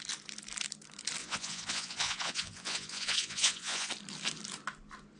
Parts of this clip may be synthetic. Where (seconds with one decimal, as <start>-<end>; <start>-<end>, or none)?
1.2-3.9

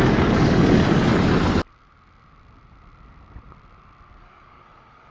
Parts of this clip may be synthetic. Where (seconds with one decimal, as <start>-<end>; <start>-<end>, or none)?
0.0-1.1; 4.2-5.1

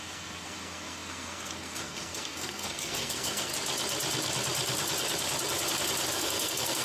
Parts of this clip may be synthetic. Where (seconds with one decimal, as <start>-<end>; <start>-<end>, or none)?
0.0-3.5; 6.1-6.8

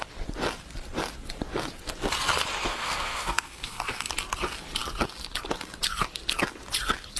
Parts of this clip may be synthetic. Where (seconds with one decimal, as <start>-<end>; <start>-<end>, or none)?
2.7-4.1

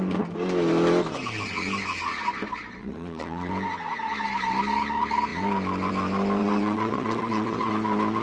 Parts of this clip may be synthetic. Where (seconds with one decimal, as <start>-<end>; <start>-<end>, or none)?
2.8-3.5; 6.4-7.7